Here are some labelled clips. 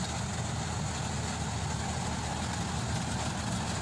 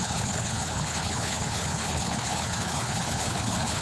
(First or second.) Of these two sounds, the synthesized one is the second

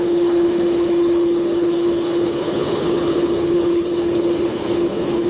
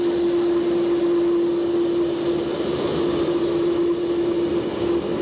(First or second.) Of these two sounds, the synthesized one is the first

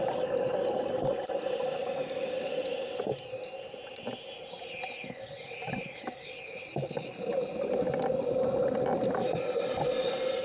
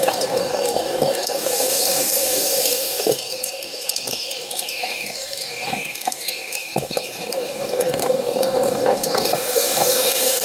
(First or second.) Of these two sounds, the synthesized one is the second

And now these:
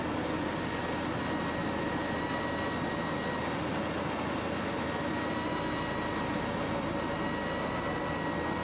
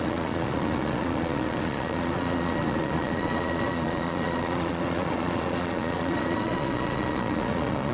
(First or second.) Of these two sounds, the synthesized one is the second